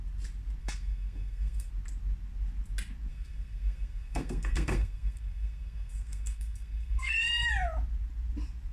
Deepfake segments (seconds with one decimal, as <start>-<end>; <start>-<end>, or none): 0.6-1.7; 3.1-7.5